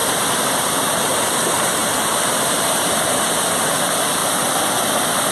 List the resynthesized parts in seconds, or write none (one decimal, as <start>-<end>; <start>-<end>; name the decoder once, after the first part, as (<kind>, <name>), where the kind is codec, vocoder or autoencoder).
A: 0.0-0.7 (vocoder, BigVGAN v2); 1.8-2.9